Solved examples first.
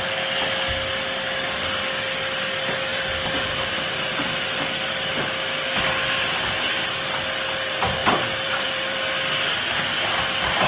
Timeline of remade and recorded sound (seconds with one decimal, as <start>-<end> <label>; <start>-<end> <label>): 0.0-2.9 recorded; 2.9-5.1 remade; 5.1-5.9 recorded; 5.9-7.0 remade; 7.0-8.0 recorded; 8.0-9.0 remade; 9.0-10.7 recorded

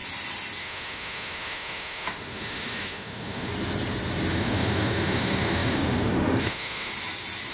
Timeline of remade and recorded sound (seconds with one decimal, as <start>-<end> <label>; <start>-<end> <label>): 0.0-0.6 recorded; 0.6-3.5 remade; 3.5-4.3 recorded; 4.3-6.9 remade; 6.9-7.5 recorded

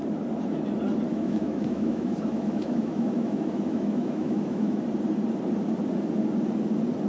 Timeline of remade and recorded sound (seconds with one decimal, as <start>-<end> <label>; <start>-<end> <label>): 0.0-1.1 recorded; 1.1-4.8 remade; 4.8-7.1 recorded

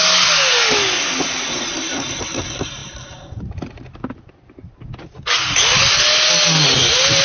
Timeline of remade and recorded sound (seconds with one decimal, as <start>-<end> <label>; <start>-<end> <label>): 0.0-7.2 recorded

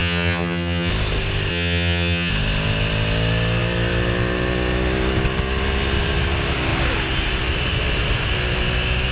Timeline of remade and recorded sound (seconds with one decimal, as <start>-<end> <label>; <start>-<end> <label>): 0.0-0.9 remade; 0.9-1.5 recorded; 1.5-2.3 remade; 2.3-9.1 recorded

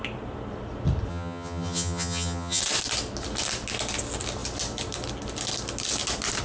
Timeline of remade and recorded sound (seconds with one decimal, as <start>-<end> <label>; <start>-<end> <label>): 0.0-1.1 recorded; 1.1-2.6 remade; 2.6-6.4 recorded

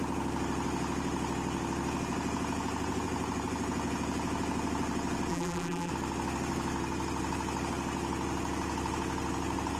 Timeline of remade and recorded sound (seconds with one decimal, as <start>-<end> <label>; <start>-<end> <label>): 0.0-5.3 recorded; 5.3-5.9 remade; 5.9-9.8 recorded